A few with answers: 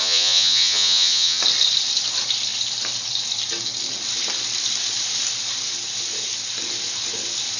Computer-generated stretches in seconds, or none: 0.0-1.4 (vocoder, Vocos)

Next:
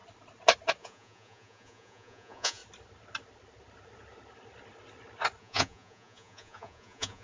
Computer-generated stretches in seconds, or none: 0.8-2.6 (vocoder, Vocos); 5.4-7.2

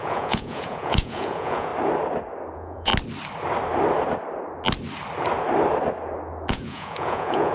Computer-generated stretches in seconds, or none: 0.0-1.7 (vocoder, Vocos); 2.5-2.9; 6.5-7.5

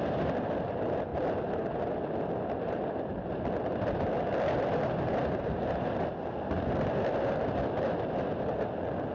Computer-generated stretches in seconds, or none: none

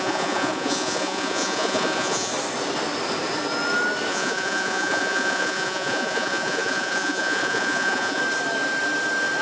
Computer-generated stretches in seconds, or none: 0.0-2.3 (vocoder, Vocos); 4.1-8.2

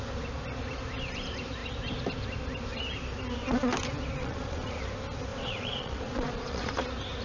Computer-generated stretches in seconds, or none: 4.2-4.8 (vocoder, Vocos); 5.3-6.7

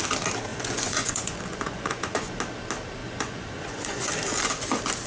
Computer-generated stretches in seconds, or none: 0.5-2.3 (vocoder, Vocos); 3.0-4.1